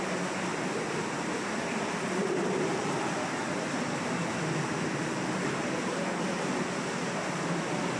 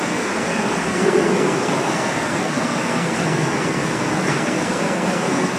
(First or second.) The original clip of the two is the first